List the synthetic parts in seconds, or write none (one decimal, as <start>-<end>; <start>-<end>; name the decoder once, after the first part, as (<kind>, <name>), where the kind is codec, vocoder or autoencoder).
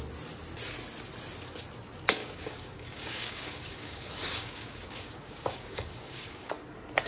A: 2.2-6.5 (codec, DAC)